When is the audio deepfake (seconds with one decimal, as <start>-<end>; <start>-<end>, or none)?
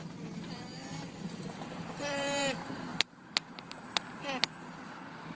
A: 0.7-2.4; 2.9-3.6